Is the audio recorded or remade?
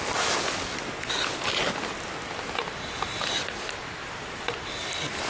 recorded